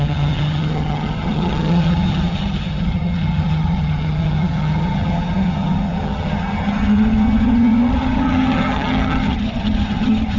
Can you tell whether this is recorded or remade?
remade